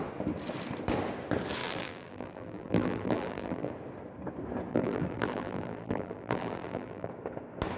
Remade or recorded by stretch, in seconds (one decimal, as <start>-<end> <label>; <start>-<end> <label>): 0.0-1.6 recorded; 1.6-3.7 remade; 3.7-4.7 recorded; 4.7-7.1 remade; 7.1-7.8 recorded